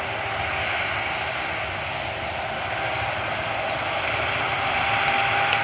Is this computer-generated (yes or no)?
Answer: no